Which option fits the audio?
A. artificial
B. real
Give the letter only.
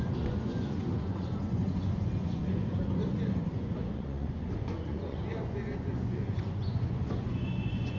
A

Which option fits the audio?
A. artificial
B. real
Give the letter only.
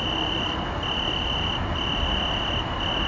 B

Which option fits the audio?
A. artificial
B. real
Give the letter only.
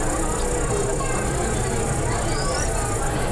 B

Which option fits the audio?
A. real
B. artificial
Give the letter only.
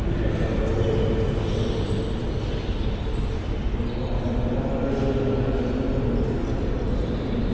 A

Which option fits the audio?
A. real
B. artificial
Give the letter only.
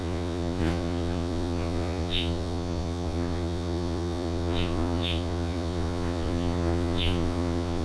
B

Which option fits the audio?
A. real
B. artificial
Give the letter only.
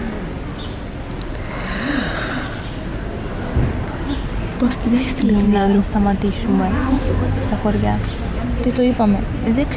A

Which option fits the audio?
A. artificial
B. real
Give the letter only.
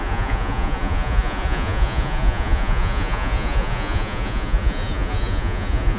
A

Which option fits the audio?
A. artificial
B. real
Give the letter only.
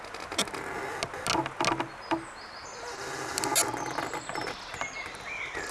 B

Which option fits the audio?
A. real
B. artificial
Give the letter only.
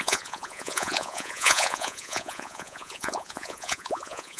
B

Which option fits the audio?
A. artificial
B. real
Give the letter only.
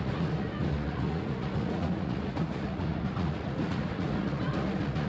A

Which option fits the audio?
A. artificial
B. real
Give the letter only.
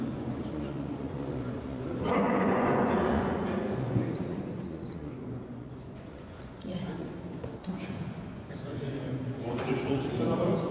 A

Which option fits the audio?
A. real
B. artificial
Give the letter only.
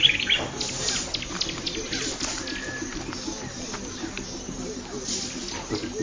A